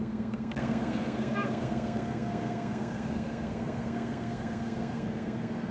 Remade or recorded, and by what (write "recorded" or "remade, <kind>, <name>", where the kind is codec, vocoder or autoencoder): remade, codec, SNAC